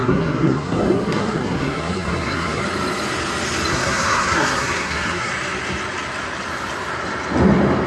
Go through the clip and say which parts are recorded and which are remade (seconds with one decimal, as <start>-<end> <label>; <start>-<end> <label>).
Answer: 0.0-2.6 remade; 2.6-3.7 recorded; 3.7-5.3 remade; 5.3-7.9 recorded